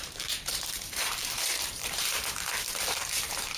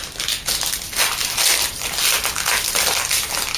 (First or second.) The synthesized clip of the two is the first